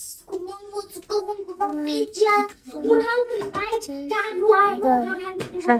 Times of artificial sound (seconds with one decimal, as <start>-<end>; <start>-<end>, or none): 1.2-5.8